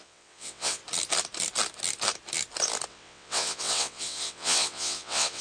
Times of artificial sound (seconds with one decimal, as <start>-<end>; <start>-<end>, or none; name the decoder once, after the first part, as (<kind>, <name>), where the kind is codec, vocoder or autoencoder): 0.0-0.8 (vocoder, WaveNeXt); 2.9-5.4